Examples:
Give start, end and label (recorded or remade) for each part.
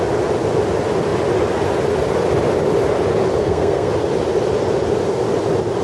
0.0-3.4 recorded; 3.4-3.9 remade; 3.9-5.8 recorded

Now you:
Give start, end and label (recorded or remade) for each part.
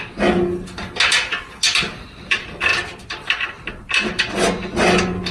0.0-2.7 recorded; 2.7-3.6 remade; 3.6-5.3 recorded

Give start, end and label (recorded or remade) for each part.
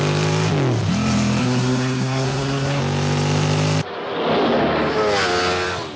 0.0-1.4 recorded; 1.4-2.8 remade; 2.8-6.0 recorded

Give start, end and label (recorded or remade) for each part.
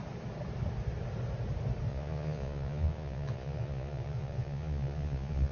0.0-1.9 recorded; 1.9-5.5 remade